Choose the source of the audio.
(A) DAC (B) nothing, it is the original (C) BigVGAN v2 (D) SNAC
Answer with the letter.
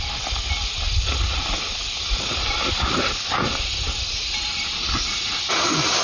B